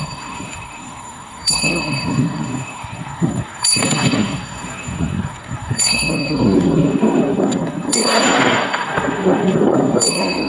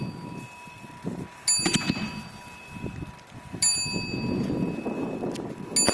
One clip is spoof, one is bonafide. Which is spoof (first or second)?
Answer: first